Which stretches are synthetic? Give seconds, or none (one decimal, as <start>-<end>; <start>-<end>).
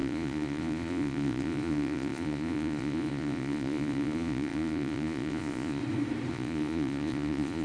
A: 0.0-5.8; 6.3-7.6